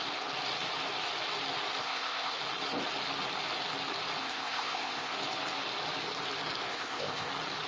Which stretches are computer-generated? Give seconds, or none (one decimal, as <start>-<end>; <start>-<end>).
1.8-2.4; 4.2-5.1; 6.7-7.3